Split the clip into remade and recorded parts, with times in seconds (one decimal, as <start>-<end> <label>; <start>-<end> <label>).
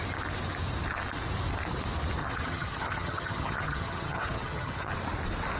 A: 0.0-2.2 recorded; 2.2-4.9 remade; 4.9-5.6 recorded